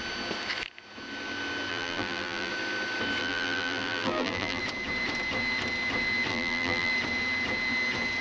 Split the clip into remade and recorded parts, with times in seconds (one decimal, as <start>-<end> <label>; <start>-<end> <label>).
0.0-1.7 recorded; 1.7-2.5 remade; 2.5-3.2 recorded; 3.2-4.6 remade; 4.6-6.3 recorded; 6.3-6.9 remade; 6.9-8.2 recorded